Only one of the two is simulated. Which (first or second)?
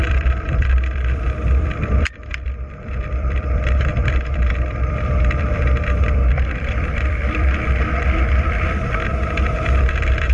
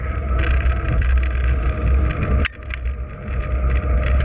first